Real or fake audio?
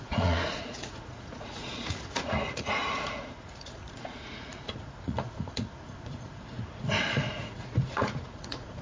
fake